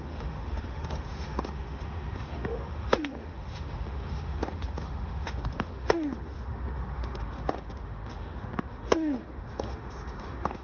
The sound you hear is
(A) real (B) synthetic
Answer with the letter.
B